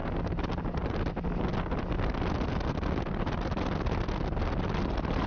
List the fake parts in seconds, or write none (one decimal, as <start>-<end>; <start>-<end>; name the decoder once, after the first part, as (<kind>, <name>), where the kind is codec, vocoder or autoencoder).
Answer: none